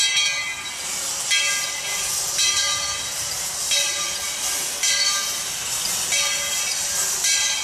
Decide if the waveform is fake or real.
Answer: real